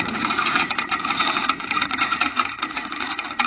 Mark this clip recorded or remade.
remade